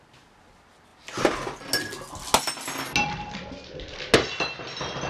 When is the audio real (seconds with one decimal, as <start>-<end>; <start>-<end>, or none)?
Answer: 0.0-5.1